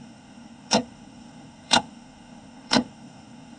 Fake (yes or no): yes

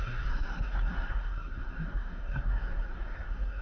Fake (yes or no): yes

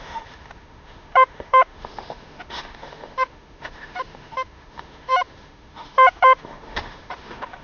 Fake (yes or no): yes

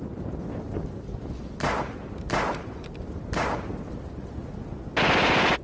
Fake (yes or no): no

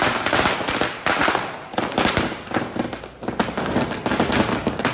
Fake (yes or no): no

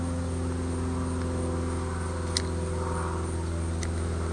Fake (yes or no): no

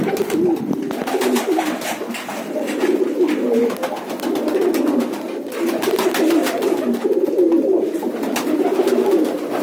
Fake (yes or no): no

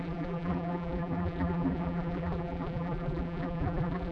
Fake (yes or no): yes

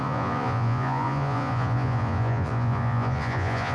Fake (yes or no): yes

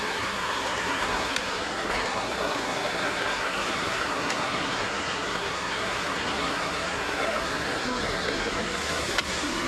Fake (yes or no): yes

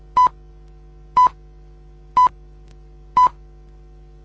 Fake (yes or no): no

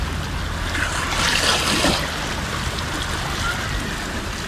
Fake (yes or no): no